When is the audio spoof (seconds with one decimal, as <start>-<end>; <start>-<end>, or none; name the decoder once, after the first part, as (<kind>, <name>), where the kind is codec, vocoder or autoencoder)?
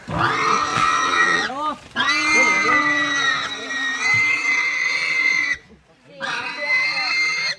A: 0.7-1.5 (vocoder, Vocos); 5.2-5.7